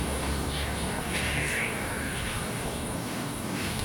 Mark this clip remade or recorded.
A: remade